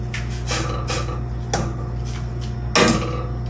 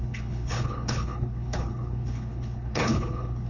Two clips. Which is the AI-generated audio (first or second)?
second